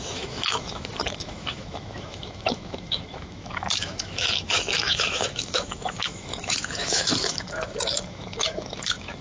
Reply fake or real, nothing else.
fake